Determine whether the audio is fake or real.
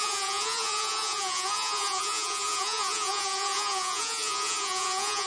fake